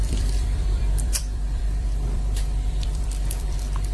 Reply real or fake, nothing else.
fake